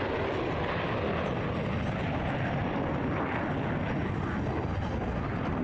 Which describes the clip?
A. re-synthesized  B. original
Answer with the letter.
B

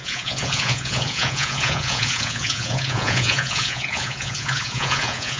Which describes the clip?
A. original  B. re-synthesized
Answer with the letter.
B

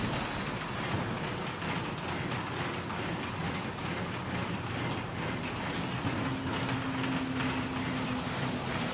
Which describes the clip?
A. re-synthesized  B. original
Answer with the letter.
B